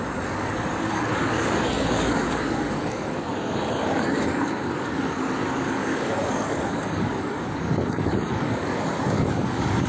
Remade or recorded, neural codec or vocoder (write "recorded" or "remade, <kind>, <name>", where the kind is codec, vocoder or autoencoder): remade, codec, DAC